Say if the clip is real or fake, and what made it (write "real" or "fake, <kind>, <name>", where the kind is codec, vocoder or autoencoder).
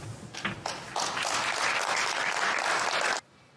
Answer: real